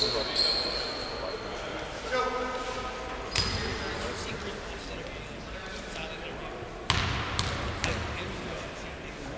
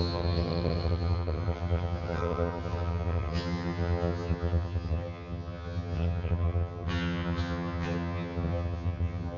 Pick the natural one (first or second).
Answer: first